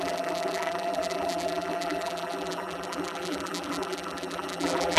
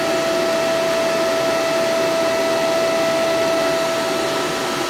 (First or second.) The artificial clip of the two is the first